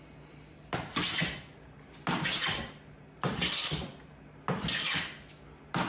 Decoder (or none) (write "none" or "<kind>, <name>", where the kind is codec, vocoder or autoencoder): none